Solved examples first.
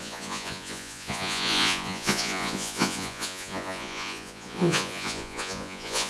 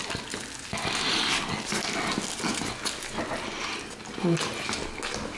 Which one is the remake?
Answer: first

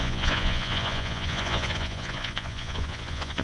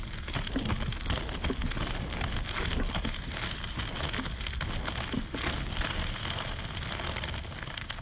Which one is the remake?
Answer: first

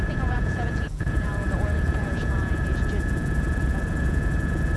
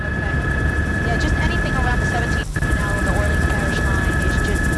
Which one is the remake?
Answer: first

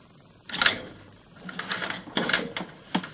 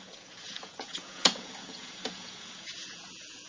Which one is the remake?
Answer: second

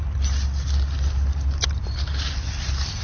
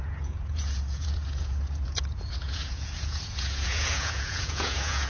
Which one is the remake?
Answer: second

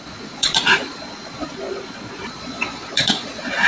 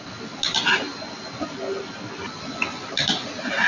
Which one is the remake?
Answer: first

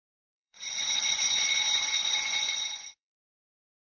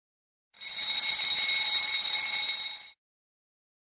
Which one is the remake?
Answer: first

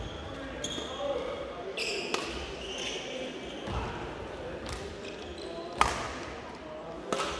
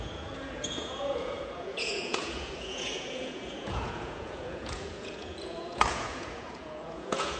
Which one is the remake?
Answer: second